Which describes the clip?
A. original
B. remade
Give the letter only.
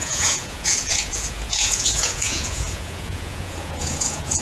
B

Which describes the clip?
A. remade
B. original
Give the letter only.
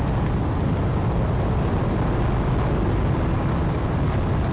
B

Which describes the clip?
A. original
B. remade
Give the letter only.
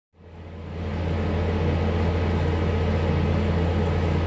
A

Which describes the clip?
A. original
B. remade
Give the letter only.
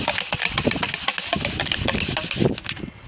A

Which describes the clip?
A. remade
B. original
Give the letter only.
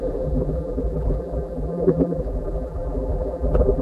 A